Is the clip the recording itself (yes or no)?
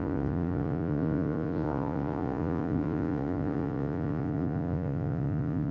no